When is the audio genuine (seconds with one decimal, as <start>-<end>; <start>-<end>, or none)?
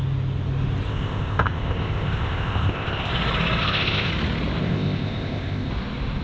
0.0-0.9; 3.1-3.6; 4.1-4.6; 5.7-6.2